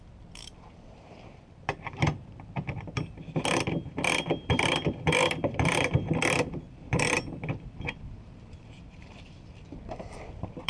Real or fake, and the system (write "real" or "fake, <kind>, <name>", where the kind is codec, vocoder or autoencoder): fake, vocoder, BigVGAN v2